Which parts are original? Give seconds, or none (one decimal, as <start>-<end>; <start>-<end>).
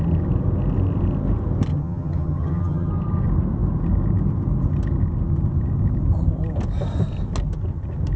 0.0-1.7; 2.9-8.2